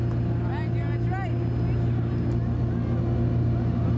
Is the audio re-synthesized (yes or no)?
no